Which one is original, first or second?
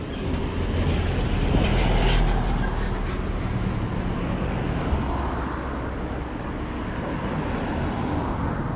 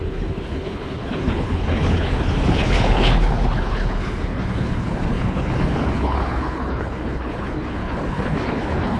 first